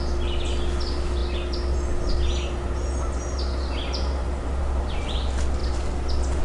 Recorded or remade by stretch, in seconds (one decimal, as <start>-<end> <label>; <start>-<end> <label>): 0.0-6.4 recorded